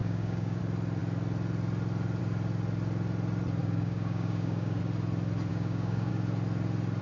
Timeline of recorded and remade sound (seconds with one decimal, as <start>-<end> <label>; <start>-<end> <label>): 0.0-0.6 remade; 0.6-3.6 recorded; 3.6-4.8 remade; 4.8-5.5 recorded; 5.5-6.1 remade; 6.1-7.0 recorded